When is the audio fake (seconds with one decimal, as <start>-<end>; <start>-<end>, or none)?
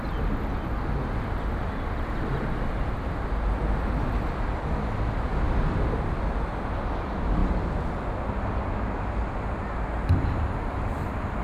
none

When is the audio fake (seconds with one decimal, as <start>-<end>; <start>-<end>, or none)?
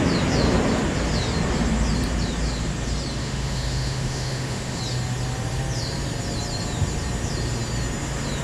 3.2-4.8